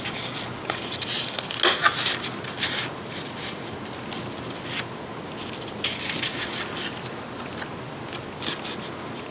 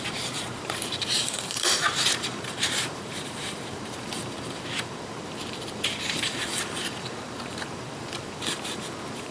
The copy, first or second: second